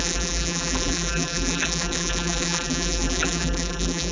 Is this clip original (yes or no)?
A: no